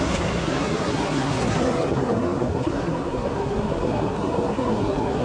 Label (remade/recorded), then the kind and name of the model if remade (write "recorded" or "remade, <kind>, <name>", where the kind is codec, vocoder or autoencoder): remade, codec, SNAC